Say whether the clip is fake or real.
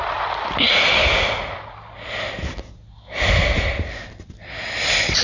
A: real